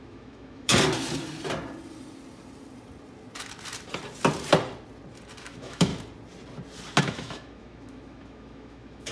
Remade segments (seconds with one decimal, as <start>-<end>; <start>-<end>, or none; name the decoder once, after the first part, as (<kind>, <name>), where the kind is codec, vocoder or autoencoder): 0.0-0.7 (autoencoder, DAC-VAE); 5.4-5.9; 7.0-9.1